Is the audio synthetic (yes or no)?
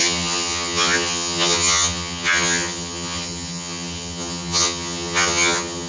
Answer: yes